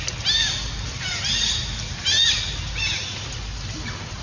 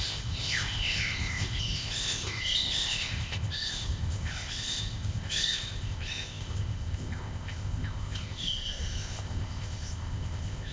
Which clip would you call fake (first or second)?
second